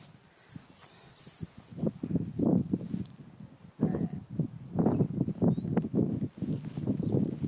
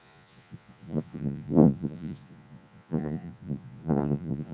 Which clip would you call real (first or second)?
first